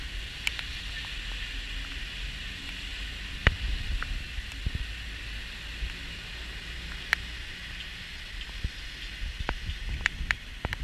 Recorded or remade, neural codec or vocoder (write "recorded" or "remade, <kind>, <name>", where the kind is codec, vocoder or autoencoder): recorded